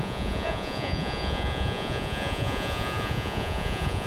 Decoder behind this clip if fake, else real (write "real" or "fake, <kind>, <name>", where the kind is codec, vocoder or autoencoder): fake, vocoder, Vocos